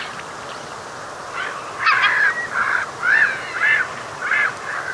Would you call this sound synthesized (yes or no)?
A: no